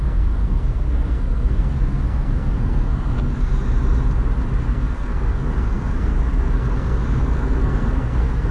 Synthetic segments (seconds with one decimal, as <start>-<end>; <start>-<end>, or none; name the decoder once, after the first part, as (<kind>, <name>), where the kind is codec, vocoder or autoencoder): 0.0-3.5 (codec, SNAC); 4.6-8.5